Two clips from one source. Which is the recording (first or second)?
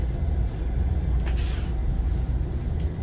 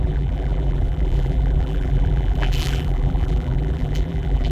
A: first